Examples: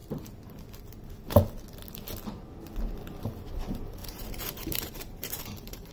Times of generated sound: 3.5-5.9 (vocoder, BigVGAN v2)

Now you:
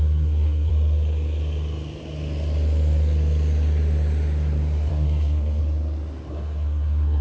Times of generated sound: 0.0-0.7 (codec, SNAC); 4.9-5.6; 6.3-7.2

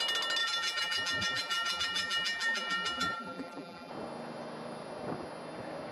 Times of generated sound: 0.4-3.9 (vocoder, BigVGAN v2)

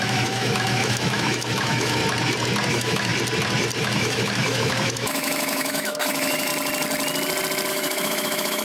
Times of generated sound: 0.0-2.0 (autoencoder, DAC-VAE); 2.7-3.1; 3.8-6.5; 7.7-8.6

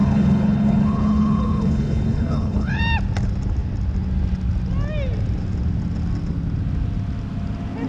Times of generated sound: 0.0-2.8 (codec, HILCodec)

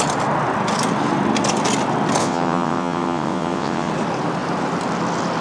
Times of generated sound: 2.2-3.9 (vocoder, WaveNeXt)

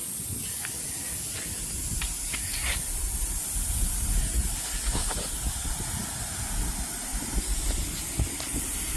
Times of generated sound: none

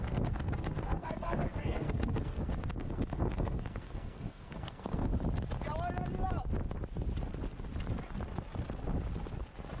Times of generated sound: 0.0-5.1 (codec, SNAC)